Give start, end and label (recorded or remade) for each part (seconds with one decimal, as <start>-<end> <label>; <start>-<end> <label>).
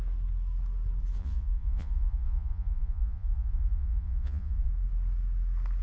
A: 0.0-1.2 recorded; 1.2-4.7 remade; 4.7-5.8 recorded